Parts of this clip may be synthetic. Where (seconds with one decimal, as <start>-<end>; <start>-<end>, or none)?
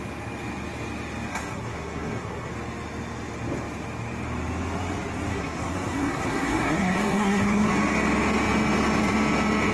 1.3-2.5; 5.3-7.7